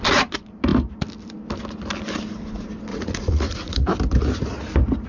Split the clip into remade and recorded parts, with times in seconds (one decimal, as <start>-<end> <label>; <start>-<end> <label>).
0.0-2.9 recorded; 2.9-3.9 remade; 3.9-5.1 recorded